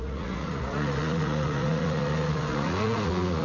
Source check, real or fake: fake